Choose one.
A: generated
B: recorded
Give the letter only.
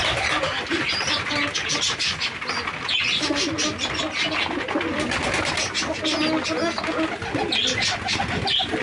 B